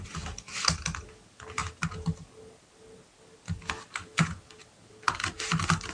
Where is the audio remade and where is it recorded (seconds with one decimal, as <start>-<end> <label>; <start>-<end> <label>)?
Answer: 0.0-5.9 recorded